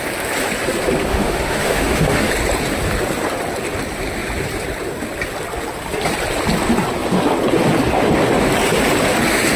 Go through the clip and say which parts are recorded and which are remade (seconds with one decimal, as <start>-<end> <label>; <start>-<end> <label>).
0.0-1.1 recorded; 1.1-2.3 remade; 2.3-9.6 recorded